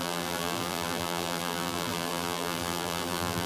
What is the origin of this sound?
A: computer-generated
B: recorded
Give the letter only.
A